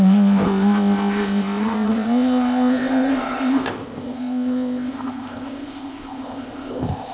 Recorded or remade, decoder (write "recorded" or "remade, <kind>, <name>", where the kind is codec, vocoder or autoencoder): remade, codec, ZipCodec